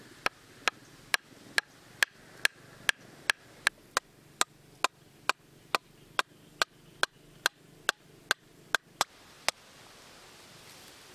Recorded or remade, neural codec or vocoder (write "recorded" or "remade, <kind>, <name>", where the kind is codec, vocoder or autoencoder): recorded